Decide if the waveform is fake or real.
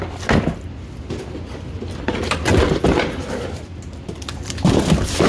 real